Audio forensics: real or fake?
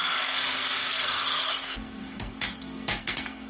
fake